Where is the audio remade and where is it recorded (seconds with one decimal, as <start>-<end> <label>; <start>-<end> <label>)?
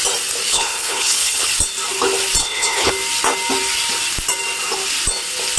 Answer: 0.0-0.5 recorded; 0.5-1.5 remade; 1.5-2.4 recorded; 2.4-2.9 remade; 2.9-5.6 recorded